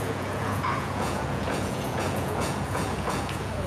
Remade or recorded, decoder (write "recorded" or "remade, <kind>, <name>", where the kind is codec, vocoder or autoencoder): remade, vocoder, Vocos